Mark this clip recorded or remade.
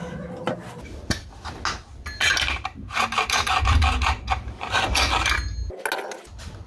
recorded